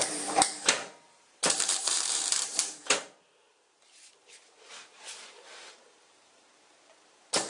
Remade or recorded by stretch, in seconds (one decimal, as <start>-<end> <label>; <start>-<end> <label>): 0.0-7.5 remade